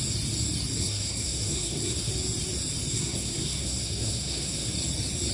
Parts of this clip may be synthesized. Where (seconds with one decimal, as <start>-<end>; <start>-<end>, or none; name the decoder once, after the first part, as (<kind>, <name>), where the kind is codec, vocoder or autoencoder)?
0.8-2.1 (codec, SNAC); 2.9-4.7